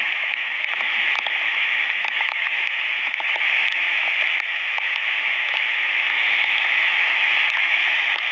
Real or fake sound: fake